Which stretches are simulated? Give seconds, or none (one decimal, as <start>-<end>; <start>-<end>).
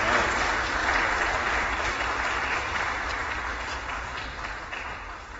none